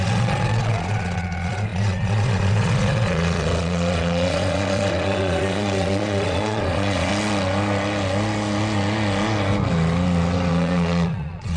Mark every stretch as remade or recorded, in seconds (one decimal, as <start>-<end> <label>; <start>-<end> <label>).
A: 0.0-7.1 remade; 7.1-10.5 recorded; 10.5-11.6 remade